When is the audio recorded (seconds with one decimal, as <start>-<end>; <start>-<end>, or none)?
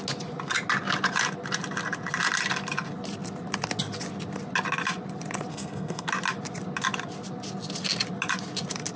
0.0-5.5; 6.1-9.0